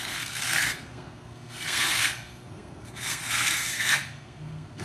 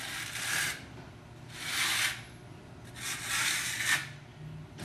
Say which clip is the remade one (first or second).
first